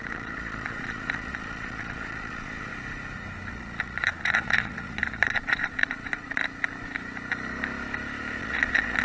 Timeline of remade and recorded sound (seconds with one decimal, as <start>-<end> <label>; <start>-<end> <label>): 0.0-2.7 remade; 2.7-3.5 recorded; 3.5-6.4 remade; 6.4-8.4 recorded; 8.4-9.0 remade